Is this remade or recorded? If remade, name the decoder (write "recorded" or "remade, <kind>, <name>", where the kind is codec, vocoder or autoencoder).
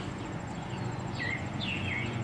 remade, vocoder, Vocos